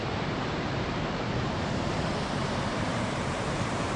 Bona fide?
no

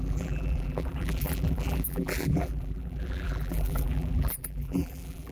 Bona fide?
no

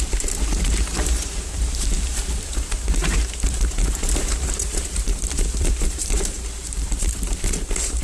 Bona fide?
no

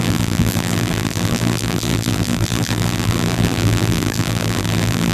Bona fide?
no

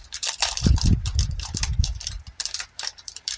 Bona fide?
no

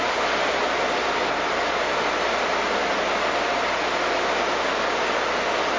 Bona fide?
yes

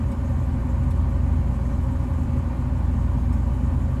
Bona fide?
yes